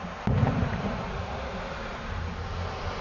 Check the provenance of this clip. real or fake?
real